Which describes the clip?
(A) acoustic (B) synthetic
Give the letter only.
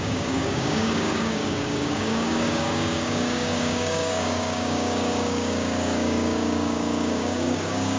B